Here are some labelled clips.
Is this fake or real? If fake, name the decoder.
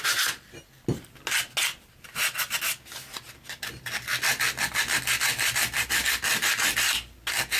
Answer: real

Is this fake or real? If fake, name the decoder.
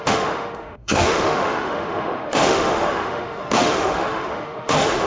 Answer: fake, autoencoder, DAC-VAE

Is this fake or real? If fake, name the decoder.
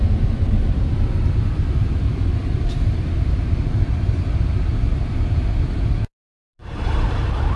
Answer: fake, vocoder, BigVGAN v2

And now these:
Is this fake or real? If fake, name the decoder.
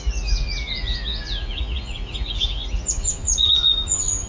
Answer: fake, vocoder, Vocos